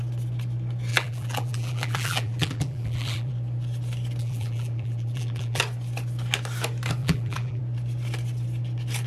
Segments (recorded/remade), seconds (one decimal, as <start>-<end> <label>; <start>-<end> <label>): 0.0-0.9 recorded; 0.9-3.3 remade; 3.3-4.2 recorded; 4.2-5.6 remade; 5.6-7.0 recorded; 7.0-7.6 remade; 7.6-9.1 recorded